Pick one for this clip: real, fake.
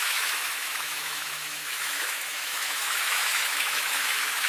fake